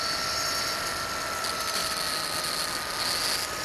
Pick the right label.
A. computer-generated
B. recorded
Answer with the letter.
B